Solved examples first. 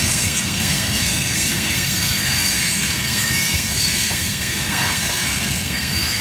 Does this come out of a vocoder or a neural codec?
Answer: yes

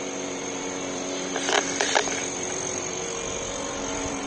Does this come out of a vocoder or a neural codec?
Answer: yes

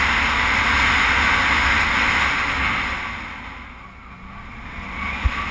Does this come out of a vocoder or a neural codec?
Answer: no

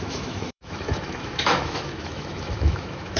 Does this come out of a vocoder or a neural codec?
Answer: yes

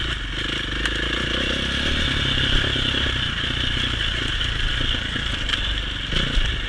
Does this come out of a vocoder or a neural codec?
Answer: no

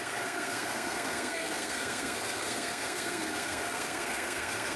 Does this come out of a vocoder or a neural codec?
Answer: yes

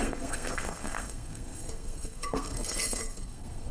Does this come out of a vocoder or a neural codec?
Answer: yes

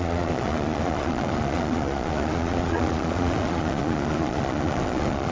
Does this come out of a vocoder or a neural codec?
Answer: yes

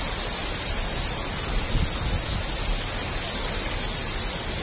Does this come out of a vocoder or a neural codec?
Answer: no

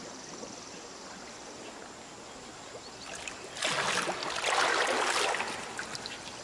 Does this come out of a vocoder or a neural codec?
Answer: no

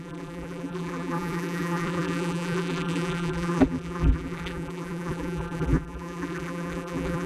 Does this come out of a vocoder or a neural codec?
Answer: yes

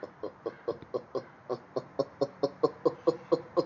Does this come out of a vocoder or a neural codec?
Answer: no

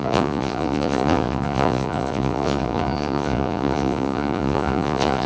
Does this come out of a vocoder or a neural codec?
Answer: yes